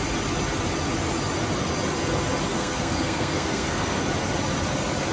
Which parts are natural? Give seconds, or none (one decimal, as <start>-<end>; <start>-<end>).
0.0-2.5; 4.0-5.1